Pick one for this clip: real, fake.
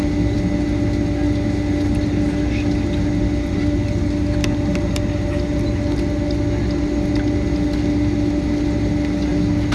real